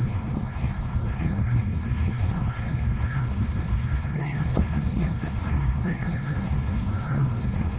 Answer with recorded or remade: remade